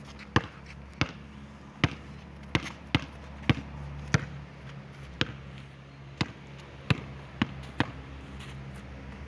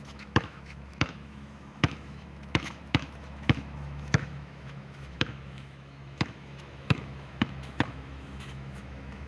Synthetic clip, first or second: second